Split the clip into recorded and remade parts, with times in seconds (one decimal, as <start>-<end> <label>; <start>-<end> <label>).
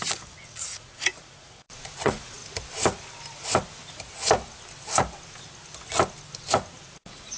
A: 0.0-0.6 recorded; 0.6-2.4 remade; 2.4-6.8 recorded; 6.8-7.4 remade